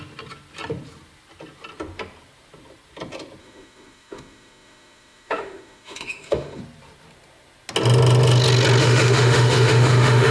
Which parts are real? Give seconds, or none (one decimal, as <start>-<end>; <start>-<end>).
0.0-3.4; 6.6-8.8